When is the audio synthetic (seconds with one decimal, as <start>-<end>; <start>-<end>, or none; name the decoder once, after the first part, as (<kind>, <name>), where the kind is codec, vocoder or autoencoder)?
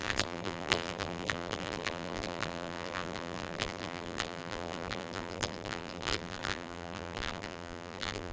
0.0-8.3 (vocoder, BigVGAN v2)